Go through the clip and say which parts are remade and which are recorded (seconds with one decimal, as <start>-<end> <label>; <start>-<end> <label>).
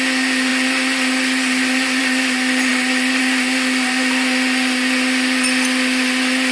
0.0-6.5 recorded